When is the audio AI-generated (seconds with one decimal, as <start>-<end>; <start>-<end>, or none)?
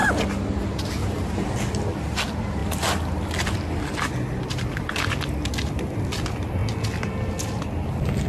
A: none